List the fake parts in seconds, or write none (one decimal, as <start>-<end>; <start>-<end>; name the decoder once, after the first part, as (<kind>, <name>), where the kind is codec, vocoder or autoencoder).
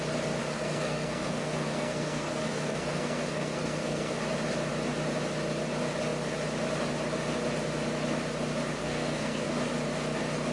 0.4-4.2 (codec, SNAC); 8.8-9.5